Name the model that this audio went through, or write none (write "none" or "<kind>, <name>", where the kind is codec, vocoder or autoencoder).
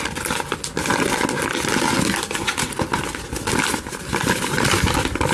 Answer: none